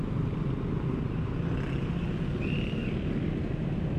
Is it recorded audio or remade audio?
recorded